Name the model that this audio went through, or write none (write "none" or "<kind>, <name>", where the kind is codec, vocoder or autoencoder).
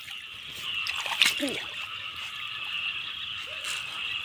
vocoder, BigVGAN v2